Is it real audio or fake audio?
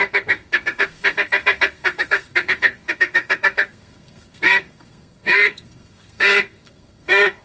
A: fake